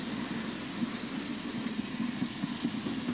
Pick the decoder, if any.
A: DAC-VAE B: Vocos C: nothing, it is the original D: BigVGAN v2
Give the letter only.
C